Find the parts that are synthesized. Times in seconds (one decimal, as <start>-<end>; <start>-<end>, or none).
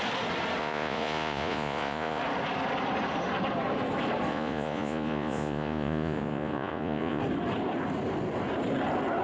0.6-2.2; 4.3-7.2